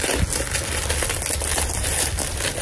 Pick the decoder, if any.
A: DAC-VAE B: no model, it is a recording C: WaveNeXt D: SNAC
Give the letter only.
B